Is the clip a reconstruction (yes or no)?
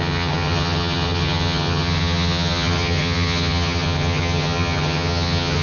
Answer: yes